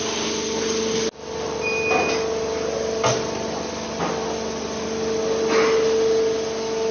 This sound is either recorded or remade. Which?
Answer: recorded